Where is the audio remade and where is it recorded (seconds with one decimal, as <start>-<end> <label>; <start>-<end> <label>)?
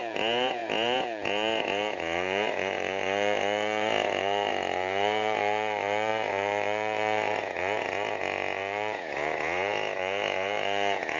0.0-11.2 remade